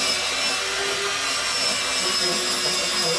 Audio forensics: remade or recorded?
recorded